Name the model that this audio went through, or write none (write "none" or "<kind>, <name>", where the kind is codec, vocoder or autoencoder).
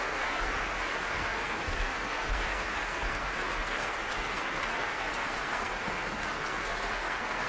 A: codec, SNAC